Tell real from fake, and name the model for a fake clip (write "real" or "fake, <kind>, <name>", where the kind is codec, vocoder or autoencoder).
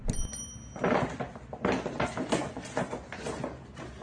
real